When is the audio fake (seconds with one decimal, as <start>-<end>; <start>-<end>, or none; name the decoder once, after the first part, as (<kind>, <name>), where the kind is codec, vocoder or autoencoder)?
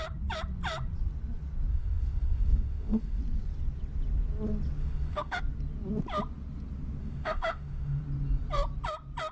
1.7-3.2 (autoencoder, DAC-VAE); 4.8-5.4; 7.0-8.0